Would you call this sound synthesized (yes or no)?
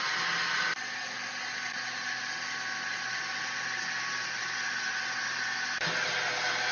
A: no